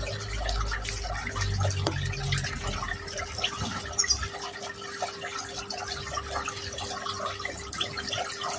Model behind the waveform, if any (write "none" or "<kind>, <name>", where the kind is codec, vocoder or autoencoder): none